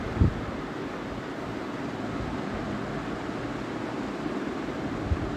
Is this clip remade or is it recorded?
recorded